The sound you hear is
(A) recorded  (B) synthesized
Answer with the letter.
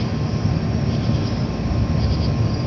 A